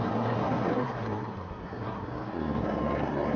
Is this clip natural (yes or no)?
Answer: no